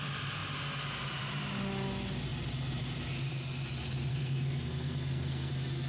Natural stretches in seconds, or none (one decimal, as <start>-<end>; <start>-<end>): 0.0-4.1; 5.5-5.9